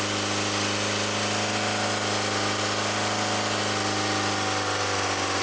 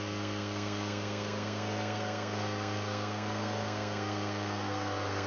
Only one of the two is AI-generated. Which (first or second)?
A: second